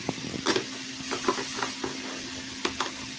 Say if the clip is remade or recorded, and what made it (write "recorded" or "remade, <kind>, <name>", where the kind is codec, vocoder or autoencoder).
recorded